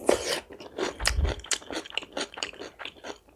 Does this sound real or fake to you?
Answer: fake